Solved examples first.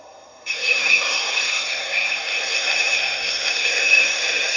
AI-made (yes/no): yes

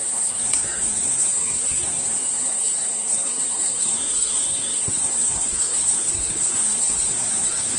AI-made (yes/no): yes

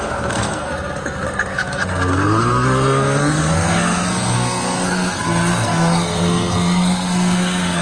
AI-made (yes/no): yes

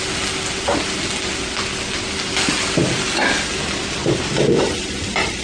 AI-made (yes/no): no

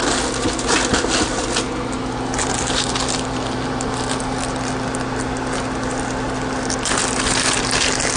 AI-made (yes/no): no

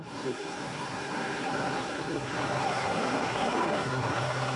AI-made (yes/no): yes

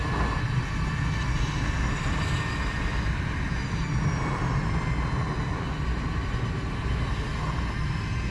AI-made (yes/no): no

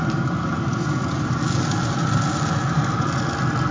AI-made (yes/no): no